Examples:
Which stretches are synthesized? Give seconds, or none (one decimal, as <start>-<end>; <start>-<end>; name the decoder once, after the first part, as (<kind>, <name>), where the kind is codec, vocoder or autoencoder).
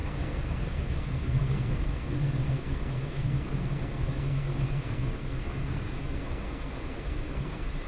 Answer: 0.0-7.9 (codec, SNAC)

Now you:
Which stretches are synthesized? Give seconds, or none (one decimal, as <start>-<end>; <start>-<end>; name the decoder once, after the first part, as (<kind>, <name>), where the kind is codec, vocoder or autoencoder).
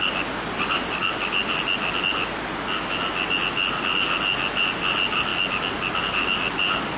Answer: none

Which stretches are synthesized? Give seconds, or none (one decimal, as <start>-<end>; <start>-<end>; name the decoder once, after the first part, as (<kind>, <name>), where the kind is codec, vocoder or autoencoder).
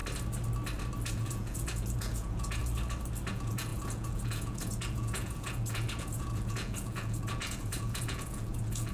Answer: 1.1-2.6 (vocoder, Vocos); 3.3-8.9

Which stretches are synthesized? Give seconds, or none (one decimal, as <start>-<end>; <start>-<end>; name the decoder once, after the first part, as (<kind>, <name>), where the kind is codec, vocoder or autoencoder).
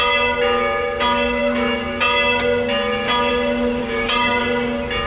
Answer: 3.8-4.4 (codec, DAC)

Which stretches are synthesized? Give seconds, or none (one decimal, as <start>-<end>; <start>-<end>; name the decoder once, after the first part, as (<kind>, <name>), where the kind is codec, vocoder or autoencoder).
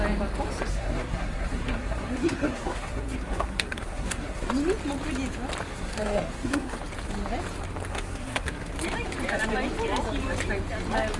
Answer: 0.7-4.5 (codec, SNAC); 5.7-6.8; 7.9-8.7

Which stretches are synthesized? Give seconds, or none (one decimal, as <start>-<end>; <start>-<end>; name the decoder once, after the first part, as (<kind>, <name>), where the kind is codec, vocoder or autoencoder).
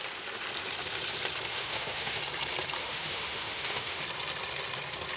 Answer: 1.5-2.2 (autoencoder, DAC-VAE); 2.8-4.0